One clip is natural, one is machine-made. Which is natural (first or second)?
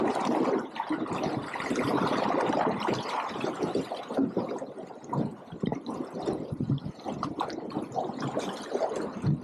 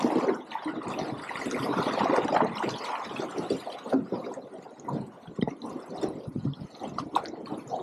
second